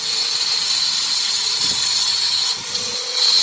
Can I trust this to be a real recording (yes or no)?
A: no